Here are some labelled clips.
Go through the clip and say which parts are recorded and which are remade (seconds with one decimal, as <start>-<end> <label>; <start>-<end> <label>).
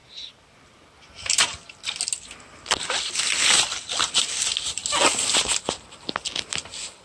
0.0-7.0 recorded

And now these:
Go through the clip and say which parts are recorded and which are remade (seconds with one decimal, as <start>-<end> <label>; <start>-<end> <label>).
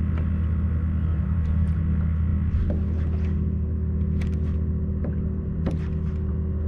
0.0-1.1 recorded; 1.1-1.8 remade; 1.8-6.7 recorded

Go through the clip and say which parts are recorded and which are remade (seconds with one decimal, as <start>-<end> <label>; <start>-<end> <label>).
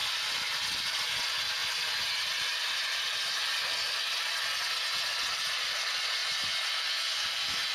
0.0-7.7 recorded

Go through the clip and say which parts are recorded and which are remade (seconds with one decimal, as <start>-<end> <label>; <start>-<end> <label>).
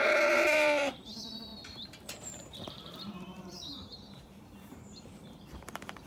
0.0-6.1 remade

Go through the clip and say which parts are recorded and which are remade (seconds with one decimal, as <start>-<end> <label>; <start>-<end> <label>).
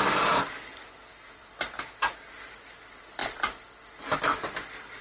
0.0-1.1 recorded; 1.1-2.1 remade; 2.1-5.0 recorded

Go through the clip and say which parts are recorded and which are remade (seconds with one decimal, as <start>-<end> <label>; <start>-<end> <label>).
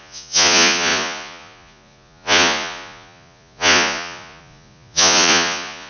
0.0-5.9 remade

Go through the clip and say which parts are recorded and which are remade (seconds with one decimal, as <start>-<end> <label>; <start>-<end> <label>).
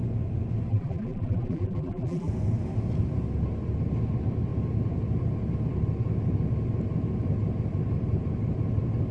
0.0-0.7 recorded; 0.7-2.3 remade; 2.3-9.1 recorded